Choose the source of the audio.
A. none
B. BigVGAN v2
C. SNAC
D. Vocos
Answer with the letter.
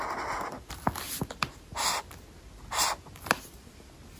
A